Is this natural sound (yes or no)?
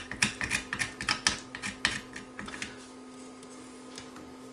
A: yes